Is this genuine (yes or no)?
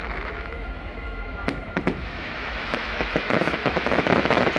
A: no